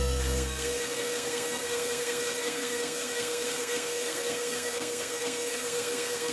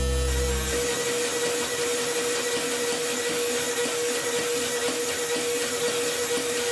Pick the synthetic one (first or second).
first